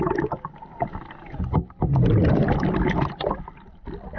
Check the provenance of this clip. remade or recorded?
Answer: recorded